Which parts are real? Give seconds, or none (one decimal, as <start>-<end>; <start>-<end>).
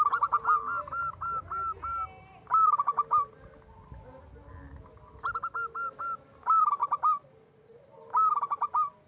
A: 0.0-9.1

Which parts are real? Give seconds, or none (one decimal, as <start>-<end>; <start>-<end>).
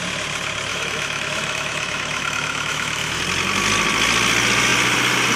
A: 0.0-0.7; 3.2-5.4